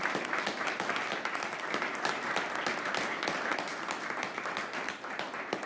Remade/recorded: recorded